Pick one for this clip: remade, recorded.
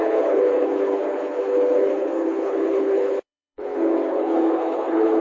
remade